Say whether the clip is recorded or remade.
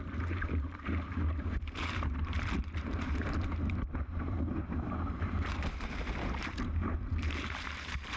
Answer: remade